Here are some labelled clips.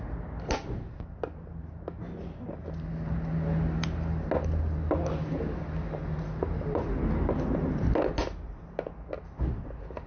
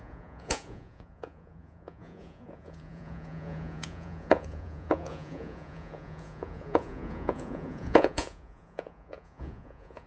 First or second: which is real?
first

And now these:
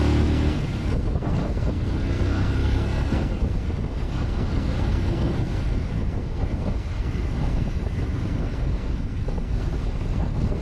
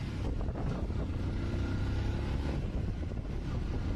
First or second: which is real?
second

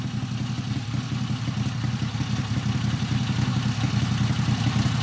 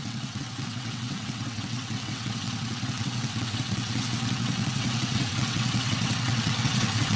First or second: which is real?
first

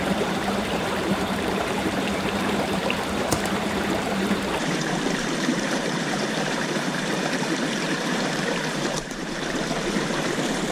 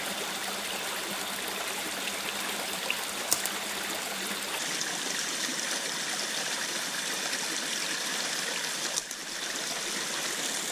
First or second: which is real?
second